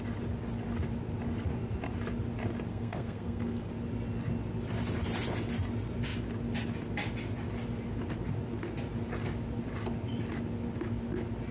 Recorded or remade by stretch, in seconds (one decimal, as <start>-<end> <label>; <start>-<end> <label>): 0.0-2.7 recorded; 2.7-3.7 remade; 3.7-11.5 recorded